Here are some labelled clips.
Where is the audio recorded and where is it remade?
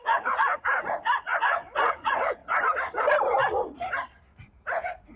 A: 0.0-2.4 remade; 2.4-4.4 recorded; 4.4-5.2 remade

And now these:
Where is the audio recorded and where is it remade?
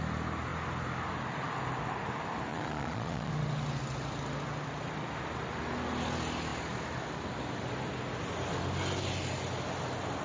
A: 0.0-2.5 recorded; 2.5-3.3 remade; 3.3-10.2 recorded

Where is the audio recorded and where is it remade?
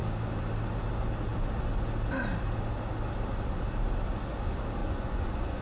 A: 0.0-4.8 recorded; 4.8-5.6 remade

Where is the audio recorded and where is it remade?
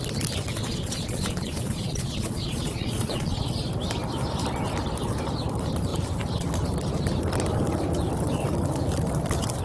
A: 0.0-0.6 recorded; 0.6-3.4 remade; 3.4-9.6 recorded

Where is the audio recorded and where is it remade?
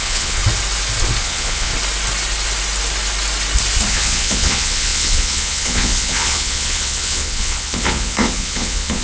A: 0.0-0.4 remade; 0.4-1.2 recorded; 1.2-1.7 remade; 1.7-3.9 recorded; 3.9-9.0 remade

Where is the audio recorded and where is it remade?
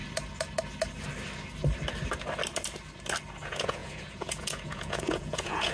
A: 0.0-3.4 recorded; 3.4-5.7 remade